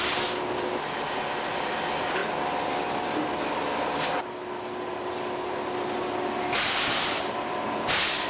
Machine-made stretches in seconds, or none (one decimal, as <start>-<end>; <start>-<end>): none